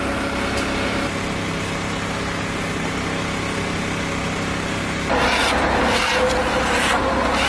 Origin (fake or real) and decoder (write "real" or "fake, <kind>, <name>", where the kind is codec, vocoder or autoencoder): real